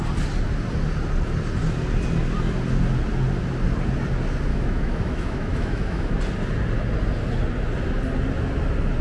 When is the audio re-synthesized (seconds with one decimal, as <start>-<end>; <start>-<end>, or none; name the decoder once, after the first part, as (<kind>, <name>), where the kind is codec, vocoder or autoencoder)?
4.5-6.2 (autoencoder, DAC-VAE)